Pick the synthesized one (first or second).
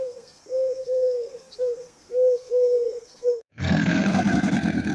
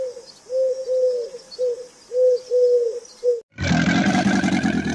first